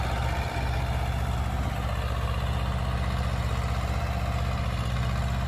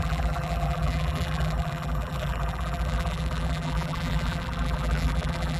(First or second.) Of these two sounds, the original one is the first